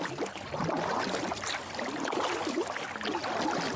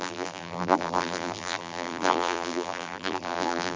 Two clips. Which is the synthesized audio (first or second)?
second